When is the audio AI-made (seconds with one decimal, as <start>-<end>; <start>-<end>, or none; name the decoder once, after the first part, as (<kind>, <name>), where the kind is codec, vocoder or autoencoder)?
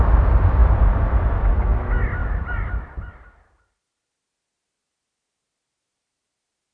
2.2-3.9 (vocoder, BigVGAN v2)